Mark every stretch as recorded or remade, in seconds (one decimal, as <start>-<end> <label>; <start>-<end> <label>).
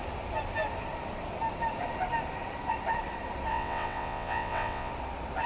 0.0-3.5 recorded; 3.5-4.9 remade; 4.9-5.5 recorded